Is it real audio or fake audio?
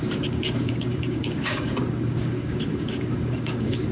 fake